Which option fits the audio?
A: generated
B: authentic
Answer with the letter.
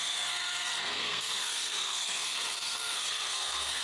A